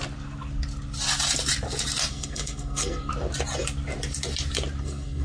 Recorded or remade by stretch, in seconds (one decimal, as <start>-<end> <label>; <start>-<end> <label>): 0.0-2.1 recorded; 2.1-3.1 remade; 3.1-4.8 recorded; 4.8-5.2 remade

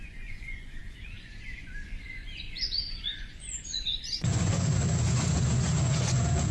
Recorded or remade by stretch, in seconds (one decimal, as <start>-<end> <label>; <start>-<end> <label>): 0.0-6.5 remade

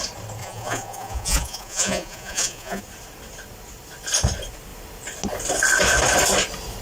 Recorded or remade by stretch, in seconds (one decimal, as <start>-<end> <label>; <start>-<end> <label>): 0.0-0.4 recorded; 0.4-2.8 remade; 2.8-6.8 recorded

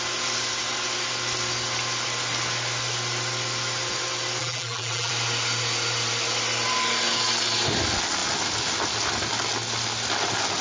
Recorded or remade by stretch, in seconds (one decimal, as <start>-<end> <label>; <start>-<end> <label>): 0.0-4.4 recorded; 4.4-5.1 remade; 5.1-10.6 recorded

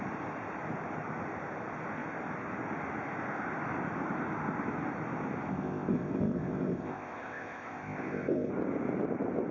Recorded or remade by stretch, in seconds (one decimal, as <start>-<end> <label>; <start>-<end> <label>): 0.0-5.5 recorded; 5.5-8.5 remade; 8.5-9.5 recorded